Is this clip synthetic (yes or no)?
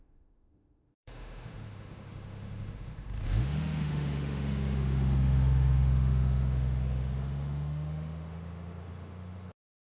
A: yes